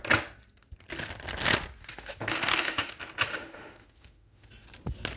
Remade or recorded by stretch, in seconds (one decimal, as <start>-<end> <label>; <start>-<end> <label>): 0.0-1.9 recorded; 1.9-2.9 remade; 2.9-3.3 recorded; 3.3-4.5 remade; 4.5-5.2 recorded